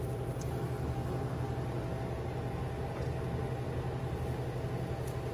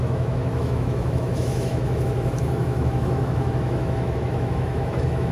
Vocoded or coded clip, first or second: second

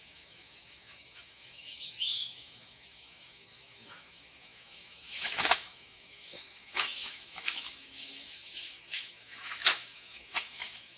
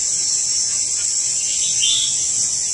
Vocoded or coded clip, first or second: first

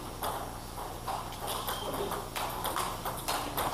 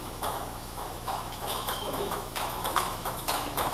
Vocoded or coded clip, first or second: second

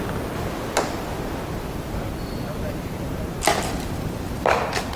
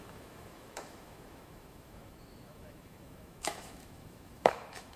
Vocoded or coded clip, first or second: second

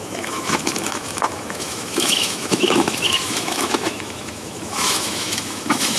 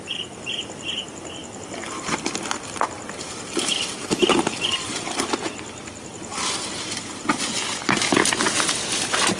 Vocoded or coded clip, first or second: first